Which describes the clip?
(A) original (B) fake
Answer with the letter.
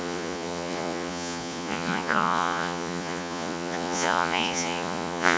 B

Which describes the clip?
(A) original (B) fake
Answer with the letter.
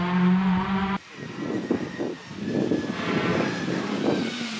A